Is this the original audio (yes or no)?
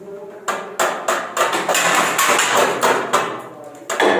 yes